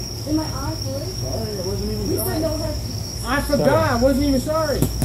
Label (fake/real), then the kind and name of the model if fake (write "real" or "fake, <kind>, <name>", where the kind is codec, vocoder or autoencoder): fake, codec, DAC